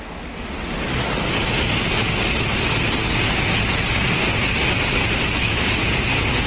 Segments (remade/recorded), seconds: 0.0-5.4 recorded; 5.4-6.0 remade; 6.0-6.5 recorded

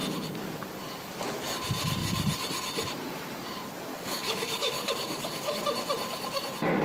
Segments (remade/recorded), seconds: 0.0-3.9 recorded; 3.9-5.6 remade; 5.6-6.8 recorded

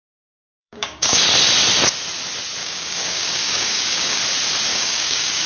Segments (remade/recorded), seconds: 0.0-0.6 recorded; 0.6-1.2 remade; 1.2-2.6 recorded; 2.6-4.2 remade; 4.2-4.7 recorded; 4.7-5.5 remade

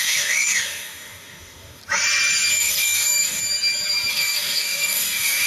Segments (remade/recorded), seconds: 0.0-1.8 remade; 1.8-2.5 recorded; 2.5-3.4 remade; 3.4-4.1 recorded; 4.1-5.5 remade

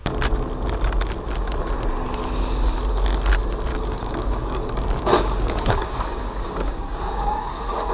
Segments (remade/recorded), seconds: 0.0-3.7 recorded; 3.7-7.5 remade; 7.5-7.9 recorded